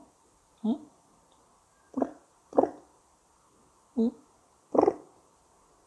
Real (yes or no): yes